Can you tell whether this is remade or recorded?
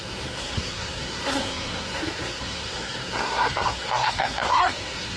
remade